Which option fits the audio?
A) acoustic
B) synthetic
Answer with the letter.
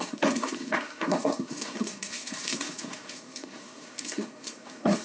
B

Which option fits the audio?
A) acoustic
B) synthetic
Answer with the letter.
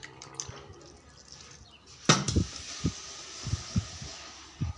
A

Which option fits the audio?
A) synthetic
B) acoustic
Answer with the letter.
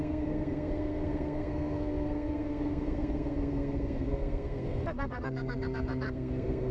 A